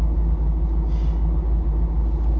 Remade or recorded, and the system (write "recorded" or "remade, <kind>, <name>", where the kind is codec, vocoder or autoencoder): recorded